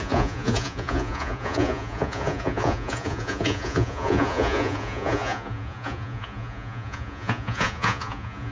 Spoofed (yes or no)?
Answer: yes